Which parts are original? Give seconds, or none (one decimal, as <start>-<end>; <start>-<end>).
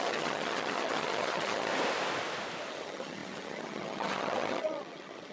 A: 1.7-2.7